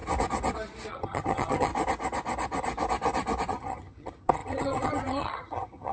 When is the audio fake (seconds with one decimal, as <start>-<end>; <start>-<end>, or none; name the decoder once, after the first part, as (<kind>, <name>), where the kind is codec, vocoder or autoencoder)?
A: 0.9-1.7 (vocoder, HiFi-GAN); 3.5-5.9